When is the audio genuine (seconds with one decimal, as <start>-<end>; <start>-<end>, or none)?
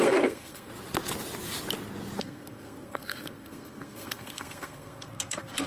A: 0.7-2.2